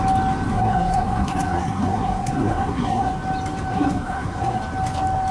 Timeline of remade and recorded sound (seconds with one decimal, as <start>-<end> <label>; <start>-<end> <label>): 0.0-0.5 recorded; 0.5-3.1 remade; 3.1-3.7 recorded; 3.7-4.6 remade; 4.6-5.3 recorded